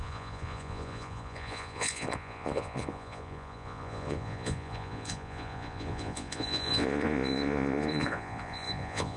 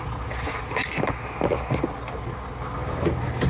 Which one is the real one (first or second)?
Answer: second